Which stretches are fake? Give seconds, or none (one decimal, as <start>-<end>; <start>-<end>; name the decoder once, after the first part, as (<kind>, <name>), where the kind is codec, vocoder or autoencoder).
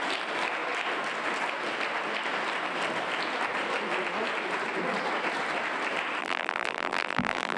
6.2-7.6 (vocoder, BigVGAN v2)